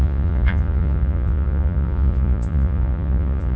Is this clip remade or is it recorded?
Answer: remade